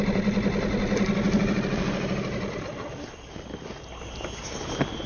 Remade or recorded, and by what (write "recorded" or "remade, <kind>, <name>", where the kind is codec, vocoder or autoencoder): recorded